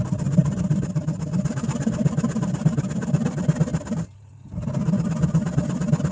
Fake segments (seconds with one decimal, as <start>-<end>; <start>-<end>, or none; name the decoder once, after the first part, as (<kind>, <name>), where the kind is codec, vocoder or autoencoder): 0.4-2.8 (vocoder, BigVGAN v2); 3.7-4.3